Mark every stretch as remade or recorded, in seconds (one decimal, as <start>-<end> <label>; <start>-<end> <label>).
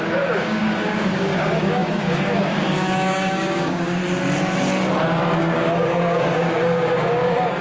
0.0-4.0 remade; 4.0-5.4 recorded; 5.4-7.6 remade